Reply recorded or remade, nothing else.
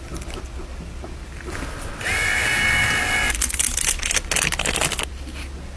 recorded